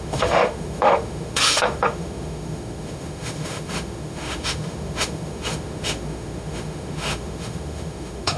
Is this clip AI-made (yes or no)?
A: yes